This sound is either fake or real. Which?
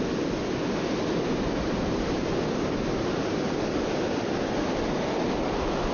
real